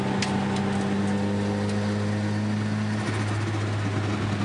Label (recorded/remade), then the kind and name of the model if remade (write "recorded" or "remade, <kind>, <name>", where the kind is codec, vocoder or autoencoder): recorded